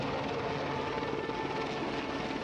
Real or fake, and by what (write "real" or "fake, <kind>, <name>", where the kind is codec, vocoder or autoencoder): real